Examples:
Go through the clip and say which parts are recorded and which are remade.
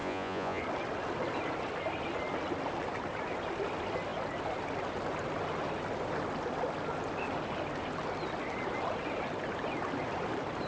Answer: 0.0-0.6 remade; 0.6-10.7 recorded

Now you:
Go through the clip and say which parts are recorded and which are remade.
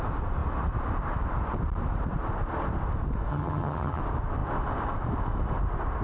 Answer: 0.0-3.3 recorded; 3.3-4.0 remade; 4.0-6.0 recorded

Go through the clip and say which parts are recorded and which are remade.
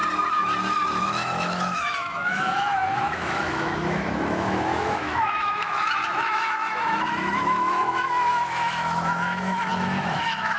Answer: 0.0-1.0 recorded; 1.0-10.6 remade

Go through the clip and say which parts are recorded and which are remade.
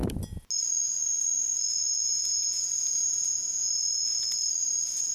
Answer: 0.0-2.1 recorded; 2.1-3.7 remade; 3.7-5.1 recorded